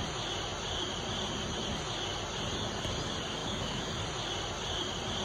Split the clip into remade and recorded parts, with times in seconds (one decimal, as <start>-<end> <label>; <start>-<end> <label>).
0.0-3.4 recorded; 3.4-3.9 remade; 3.9-5.2 recorded